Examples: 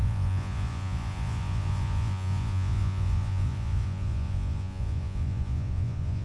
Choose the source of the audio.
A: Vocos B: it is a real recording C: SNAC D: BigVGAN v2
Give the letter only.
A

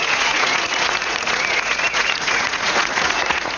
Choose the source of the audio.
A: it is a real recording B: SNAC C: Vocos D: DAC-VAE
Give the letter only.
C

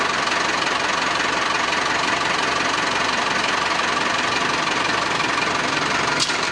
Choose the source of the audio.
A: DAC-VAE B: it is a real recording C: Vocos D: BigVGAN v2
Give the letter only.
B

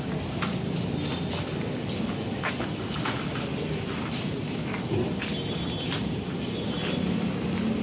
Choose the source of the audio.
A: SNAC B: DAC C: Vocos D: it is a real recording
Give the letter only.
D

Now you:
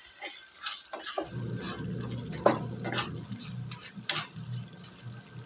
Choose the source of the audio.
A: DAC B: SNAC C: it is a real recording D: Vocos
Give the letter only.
C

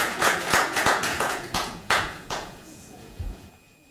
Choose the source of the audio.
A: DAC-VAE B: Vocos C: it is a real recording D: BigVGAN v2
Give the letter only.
B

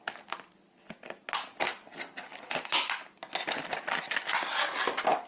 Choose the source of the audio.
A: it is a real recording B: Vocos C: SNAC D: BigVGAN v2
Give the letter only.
A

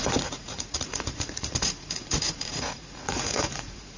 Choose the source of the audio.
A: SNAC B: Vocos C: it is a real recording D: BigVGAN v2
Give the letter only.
B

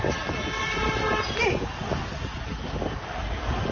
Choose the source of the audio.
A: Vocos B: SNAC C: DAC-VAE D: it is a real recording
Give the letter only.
D